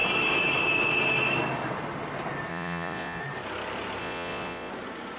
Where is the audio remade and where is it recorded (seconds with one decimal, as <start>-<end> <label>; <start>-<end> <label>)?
0.0-2.5 recorded; 2.5-3.2 remade; 3.2-4.0 recorded; 4.0-4.7 remade; 4.7-5.2 recorded